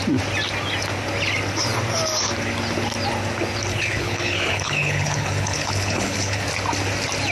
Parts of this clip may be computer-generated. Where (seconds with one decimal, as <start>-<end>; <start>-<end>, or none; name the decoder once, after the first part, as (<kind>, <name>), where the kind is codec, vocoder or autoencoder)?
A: 3.7-6.4 (codec, HILCodec)